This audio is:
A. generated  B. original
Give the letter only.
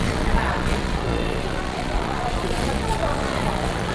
A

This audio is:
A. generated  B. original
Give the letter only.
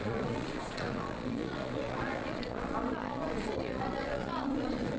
A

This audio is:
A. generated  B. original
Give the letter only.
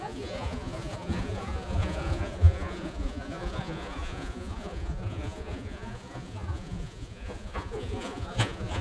A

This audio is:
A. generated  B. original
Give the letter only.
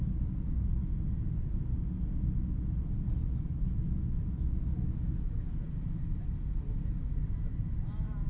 B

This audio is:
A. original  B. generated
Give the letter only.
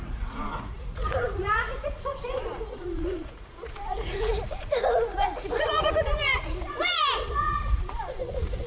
B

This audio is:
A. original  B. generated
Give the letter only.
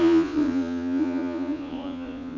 B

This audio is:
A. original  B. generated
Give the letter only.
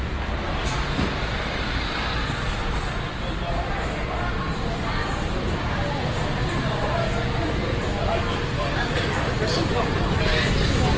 A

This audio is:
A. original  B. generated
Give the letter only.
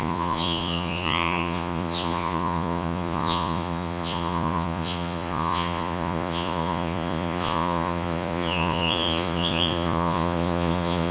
B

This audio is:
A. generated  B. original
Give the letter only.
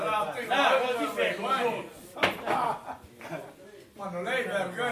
B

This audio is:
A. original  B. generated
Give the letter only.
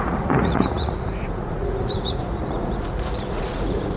B